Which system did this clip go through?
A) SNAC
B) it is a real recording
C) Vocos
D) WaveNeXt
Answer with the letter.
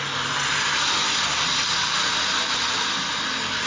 B